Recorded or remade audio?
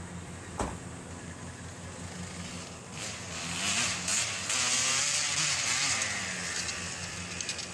recorded